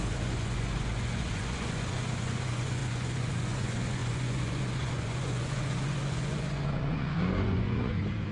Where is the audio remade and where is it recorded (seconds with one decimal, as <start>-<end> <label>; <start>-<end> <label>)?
0.0-8.3 remade